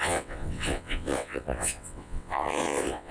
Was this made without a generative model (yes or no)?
no